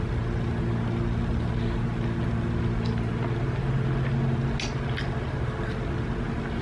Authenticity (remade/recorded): recorded